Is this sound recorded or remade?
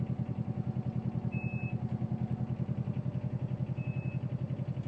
recorded